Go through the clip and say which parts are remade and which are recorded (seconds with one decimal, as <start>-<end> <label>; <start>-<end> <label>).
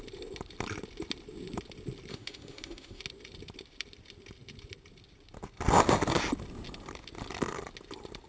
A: 0.0-2.1 recorded; 2.1-3.0 remade; 3.0-8.3 recorded